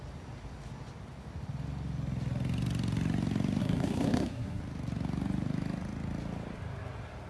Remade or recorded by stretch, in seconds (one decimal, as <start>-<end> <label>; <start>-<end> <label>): 0.0-3.6 recorded; 3.6-4.6 remade; 4.6-7.3 recorded

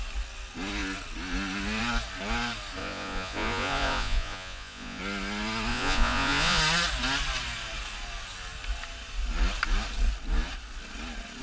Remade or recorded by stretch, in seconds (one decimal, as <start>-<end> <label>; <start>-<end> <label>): 0.0-2.8 recorded; 2.8-5.0 remade; 5.0-5.7 recorded; 5.7-6.6 remade; 6.6-11.4 recorded

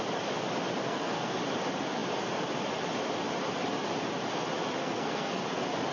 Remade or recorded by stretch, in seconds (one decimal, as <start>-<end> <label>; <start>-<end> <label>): 0.0-0.8 recorded; 0.8-1.4 remade; 1.4-4.8 recorded; 4.8-5.4 remade; 5.4-5.9 recorded

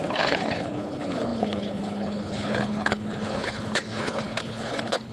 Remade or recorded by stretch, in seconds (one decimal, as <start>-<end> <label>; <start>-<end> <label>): 0.0-5.1 remade